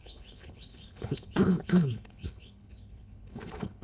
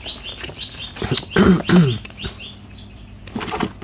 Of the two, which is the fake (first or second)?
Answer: first